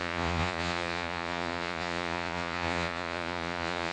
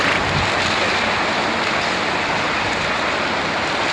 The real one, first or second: second